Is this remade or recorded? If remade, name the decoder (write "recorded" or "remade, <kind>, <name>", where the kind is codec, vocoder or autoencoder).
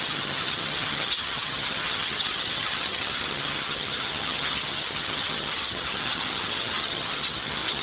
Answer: remade, vocoder, HiFi-GAN